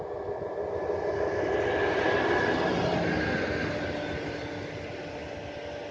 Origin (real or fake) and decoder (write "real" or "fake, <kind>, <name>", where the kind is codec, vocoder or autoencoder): real